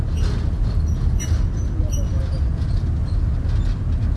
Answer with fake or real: real